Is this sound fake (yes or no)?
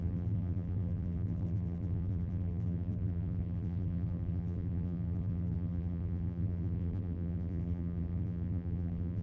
yes